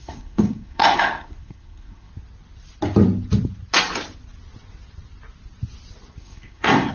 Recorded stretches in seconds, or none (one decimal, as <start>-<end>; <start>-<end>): 2.1-6.2